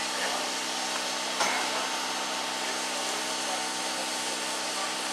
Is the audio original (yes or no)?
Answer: yes